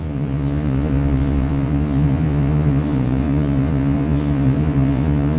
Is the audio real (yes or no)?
no